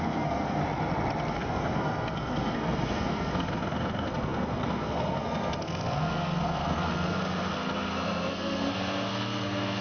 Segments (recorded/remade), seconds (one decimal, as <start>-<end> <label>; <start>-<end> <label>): 0.0-0.6 remade; 0.6-1.3 recorded; 1.3-9.8 remade